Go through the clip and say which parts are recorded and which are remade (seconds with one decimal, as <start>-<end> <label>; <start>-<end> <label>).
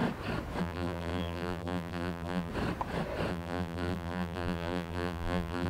0.0-0.6 recorded; 0.6-2.5 remade; 2.5-3.3 recorded; 3.3-5.7 remade